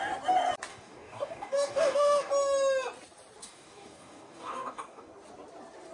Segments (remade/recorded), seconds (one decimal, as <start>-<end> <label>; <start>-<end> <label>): 0.0-0.7 recorded; 0.7-2.3 remade; 2.3-3.4 recorded; 3.4-5.1 remade; 5.1-5.9 recorded